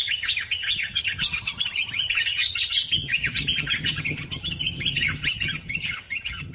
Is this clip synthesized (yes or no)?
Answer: yes